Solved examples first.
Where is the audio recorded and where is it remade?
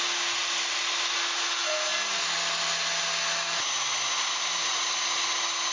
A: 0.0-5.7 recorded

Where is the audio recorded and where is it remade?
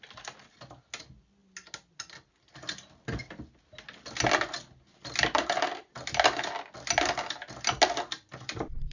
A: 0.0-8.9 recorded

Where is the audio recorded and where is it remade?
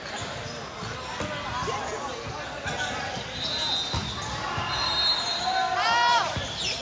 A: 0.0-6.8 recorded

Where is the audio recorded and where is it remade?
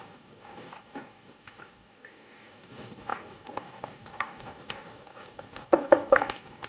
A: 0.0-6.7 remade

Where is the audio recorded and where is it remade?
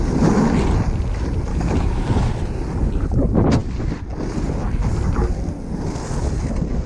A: 0.0-1.5 recorded; 1.5-2.3 remade; 2.3-6.9 recorded